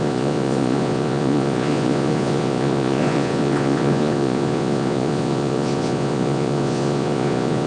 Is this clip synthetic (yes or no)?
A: yes